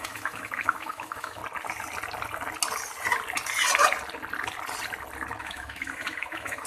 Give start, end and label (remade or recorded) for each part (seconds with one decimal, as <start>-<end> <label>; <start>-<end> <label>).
0.0-1.4 remade; 1.4-5.4 recorded; 5.4-6.7 remade